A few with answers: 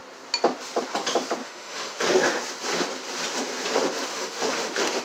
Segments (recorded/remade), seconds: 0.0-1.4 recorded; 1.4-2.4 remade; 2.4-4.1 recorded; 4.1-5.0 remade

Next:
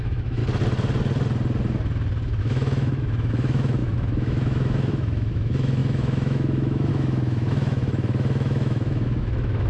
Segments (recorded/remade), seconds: 0.0-0.4 remade; 0.4-2.4 recorded; 2.4-9.7 remade

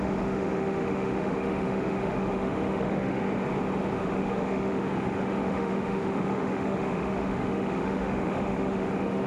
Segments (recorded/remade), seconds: 0.0-3.2 remade; 3.2-4.0 recorded; 4.0-9.3 remade

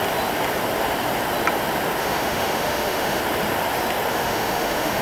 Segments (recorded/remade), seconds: 0.0-2.0 recorded; 2.0-3.2 remade; 3.2-4.1 recorded; 4.1-5.0 remade

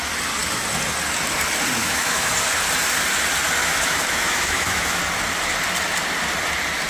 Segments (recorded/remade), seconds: 0.0-1.8 recorded; 1.8-2.3 remade; 2.3-3.6 recorded; 3.6-5.0 remade; 5.0-6.9 recorded

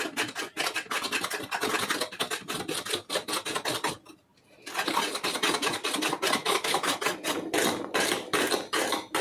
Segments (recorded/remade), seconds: 0.0-6.4 recorded; 6.4-6.9 remade; 6.9-9.2 recorded

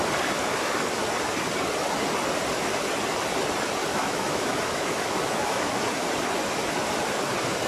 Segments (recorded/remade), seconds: 0.0-3.9 recorded; 3.9-5.8 remade; 5.8-7.7 recorded

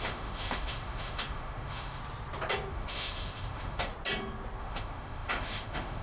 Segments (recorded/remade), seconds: 0.0-2.0 remade; 2.0-2.7 recorded; 2.7-3.9 remade; 3.9-4.6 recorded; 4.6-6.0 remade